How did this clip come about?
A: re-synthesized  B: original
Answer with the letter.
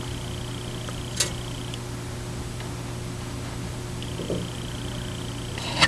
B